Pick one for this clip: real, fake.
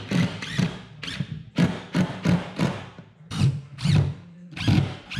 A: fake